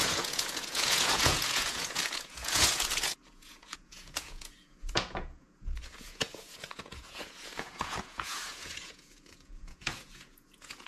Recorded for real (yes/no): no